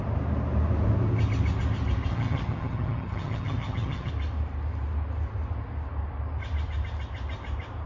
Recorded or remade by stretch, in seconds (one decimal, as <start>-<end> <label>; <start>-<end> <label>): 0.0-2.1 recorded; 2.1-4.1 remade; 4.1-7.9 recorded